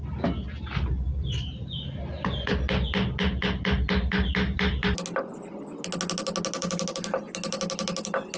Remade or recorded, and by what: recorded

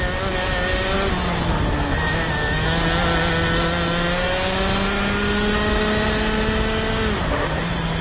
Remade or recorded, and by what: recorded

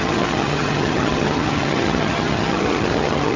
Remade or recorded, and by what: remade, vocoder, HiFi-GAN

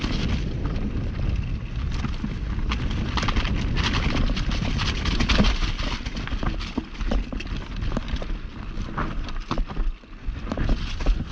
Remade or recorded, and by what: recorded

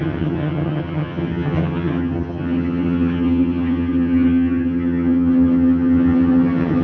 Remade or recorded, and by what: remade, vocoder, HiFi-GAN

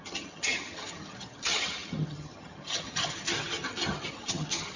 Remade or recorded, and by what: remade, vocoder, HiFi-GAN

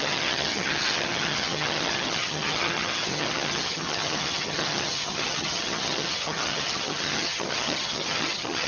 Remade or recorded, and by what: remade, vocoder, HiFi-GAN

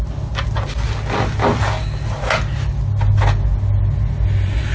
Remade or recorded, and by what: recorded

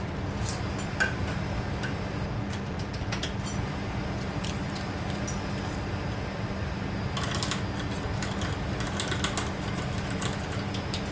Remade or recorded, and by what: recorded